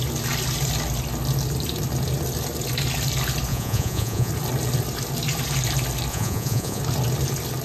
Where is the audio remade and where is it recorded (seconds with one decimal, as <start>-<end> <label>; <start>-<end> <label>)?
0.0-3.5 recorded; 3.5-4.3 remade; 4.3-6.1 recorded; 6.1-6.8 remade; 6.8-7.6 recorded